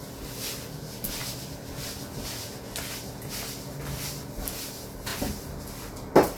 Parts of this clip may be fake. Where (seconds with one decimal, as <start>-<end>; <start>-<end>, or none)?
none